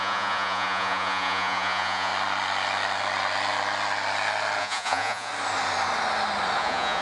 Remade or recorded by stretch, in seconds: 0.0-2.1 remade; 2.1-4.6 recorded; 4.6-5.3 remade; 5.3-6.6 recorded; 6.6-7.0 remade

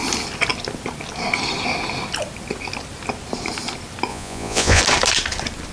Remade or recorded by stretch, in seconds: 0.0-4.1 recorded; 4.1-4.8 remade; 4.8-5.7 recorded

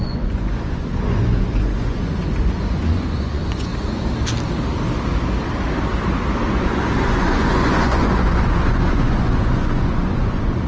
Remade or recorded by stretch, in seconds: 0.0-3.7 remade; 3.7-6.5 recorded; 6.5-10.7 remade